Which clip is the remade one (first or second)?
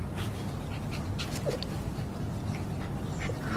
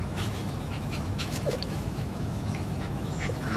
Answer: second